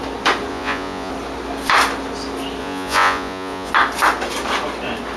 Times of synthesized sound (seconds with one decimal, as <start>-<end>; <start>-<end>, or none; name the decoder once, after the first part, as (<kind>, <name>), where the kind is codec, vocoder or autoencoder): 0.5-1.1 (vocoder, Vocos); 2.6-3.7